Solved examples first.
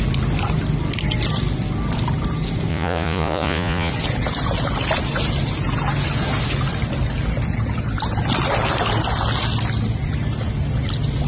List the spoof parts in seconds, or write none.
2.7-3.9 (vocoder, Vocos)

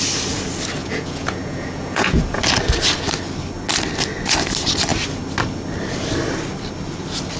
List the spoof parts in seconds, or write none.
0.8-2.4 (vocoder, Vocos)

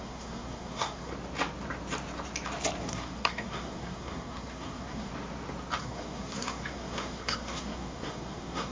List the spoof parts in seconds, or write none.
0.0-1.1 (codec, SNAC); 2.8-5.1; 5.8-8.7

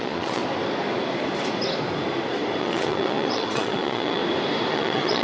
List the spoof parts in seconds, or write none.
0.0-0.4 (vocoder, Vocos); 2.6-4.2; 4.7-5.2

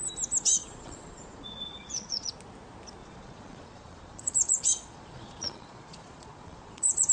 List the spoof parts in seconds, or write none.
0.5-2.3 (vocoder, Vocos); 3.0-7.1

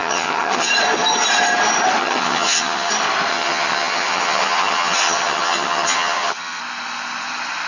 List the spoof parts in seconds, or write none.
0.0-0.7 (vocoder, HiFi-GAN); 2.0-2.9; 3.3-6.6

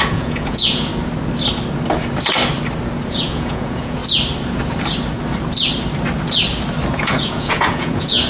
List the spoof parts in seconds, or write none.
0.0-0.9 (vocoder, Vocos); 3.1-4.0; 6.9-8.3

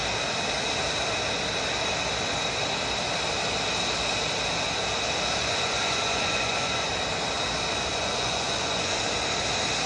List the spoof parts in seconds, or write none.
5.4-6.9 (vocoder, Vocos); 7.9-9.0